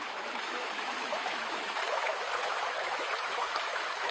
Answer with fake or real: fake